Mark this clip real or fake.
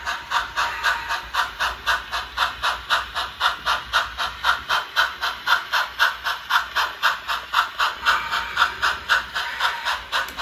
real